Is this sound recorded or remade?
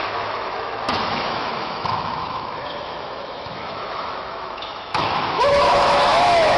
remade